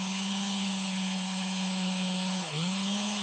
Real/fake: fake